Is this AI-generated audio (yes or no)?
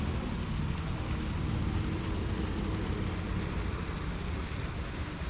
no